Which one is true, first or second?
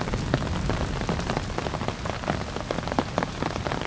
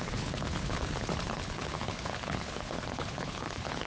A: first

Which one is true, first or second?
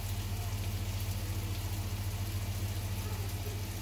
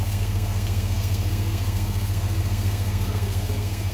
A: first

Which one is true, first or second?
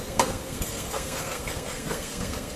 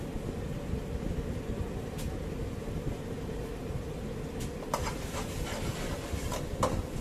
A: second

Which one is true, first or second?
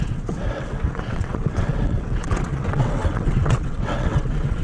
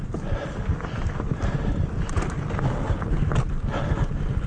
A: second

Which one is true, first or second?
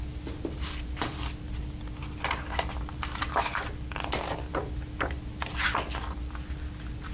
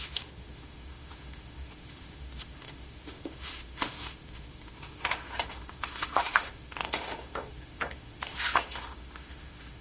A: first